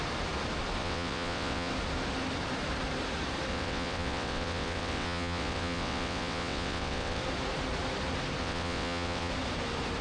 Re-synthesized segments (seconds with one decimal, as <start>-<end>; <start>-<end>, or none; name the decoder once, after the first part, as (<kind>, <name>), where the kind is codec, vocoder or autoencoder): 0.8-1.7 (vocoder, WaveNeXt); 3.5-7.2; 8.4-9.3